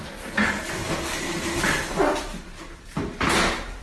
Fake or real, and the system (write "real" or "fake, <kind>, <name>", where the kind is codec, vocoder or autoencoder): real